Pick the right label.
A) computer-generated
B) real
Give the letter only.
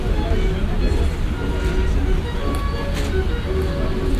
B